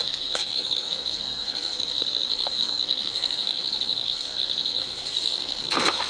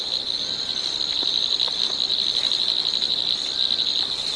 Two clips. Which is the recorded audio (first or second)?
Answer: second